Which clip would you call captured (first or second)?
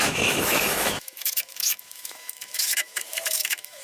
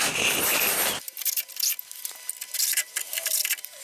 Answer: second